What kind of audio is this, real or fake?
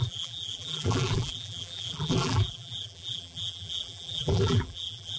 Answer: fake